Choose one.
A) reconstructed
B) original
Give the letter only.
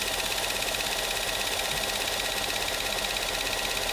B